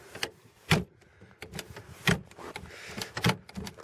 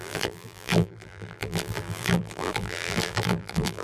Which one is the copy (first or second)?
second